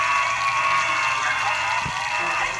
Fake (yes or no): no